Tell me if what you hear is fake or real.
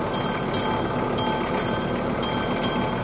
real